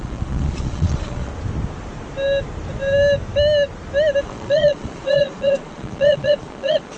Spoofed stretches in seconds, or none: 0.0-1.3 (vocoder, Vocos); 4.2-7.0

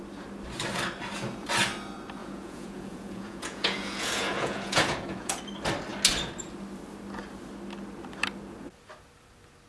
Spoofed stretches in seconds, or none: 2.2-5.4 (vocoder, Vocos)

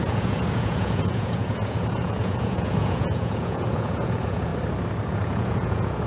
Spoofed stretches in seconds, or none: 0.0-4.5 (vocoder, Vocos); 5.1-6.1

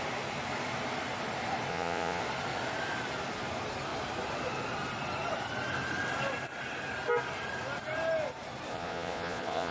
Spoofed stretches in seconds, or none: 1.7-2.2 (vocoder, Vocos); 8.7-9.7

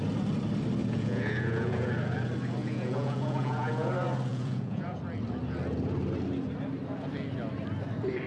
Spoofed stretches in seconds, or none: 0.8-1.9 (vocoder, Vocos); 2.6-3.9; 4.3-5.0

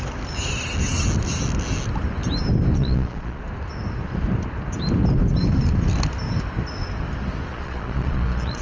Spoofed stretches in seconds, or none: 2.8-3.4 (vocoder, Vocos); 7.5-8.6

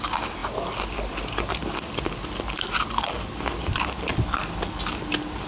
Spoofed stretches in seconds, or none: none

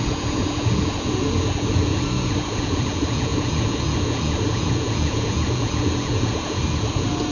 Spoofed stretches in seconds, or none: 0.0-7.3 (vocoder, Vocos)